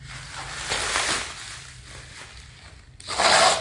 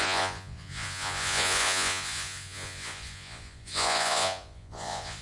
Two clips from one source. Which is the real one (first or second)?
first